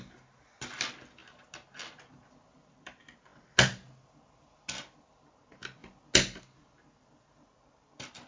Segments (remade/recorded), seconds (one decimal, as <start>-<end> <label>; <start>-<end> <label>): 0.0-8.3 recorded